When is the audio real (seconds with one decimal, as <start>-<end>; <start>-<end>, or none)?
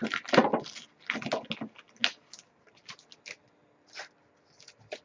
0.7-5.0